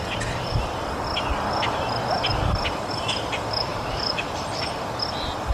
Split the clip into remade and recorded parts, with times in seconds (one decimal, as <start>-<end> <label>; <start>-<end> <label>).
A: 0.0-3.7 recorded; 3.7-5.0 remade; 5.0-5.5 recorded